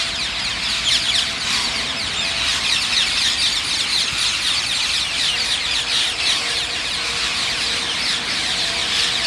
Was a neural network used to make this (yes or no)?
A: no